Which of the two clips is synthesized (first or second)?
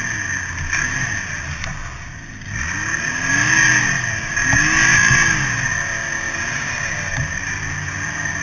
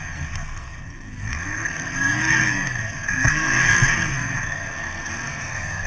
second